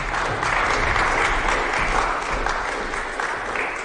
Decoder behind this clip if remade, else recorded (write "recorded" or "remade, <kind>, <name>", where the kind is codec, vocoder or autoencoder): recorded